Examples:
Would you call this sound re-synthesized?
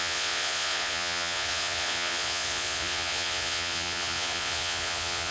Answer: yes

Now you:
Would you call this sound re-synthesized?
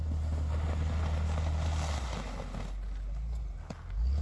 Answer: no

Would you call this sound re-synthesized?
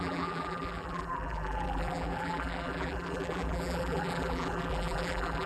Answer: yes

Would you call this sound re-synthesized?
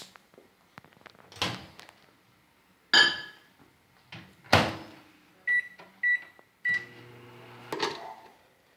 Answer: no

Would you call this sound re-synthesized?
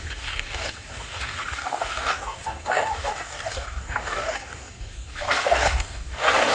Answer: yes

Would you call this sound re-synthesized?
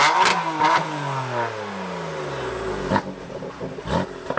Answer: no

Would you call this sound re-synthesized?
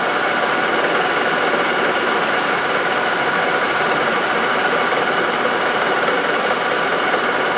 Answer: no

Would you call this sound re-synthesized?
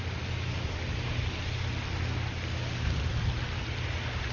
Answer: no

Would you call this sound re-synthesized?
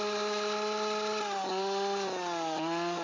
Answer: no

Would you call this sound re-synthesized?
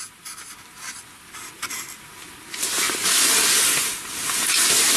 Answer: no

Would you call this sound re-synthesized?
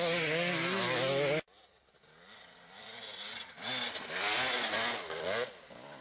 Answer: no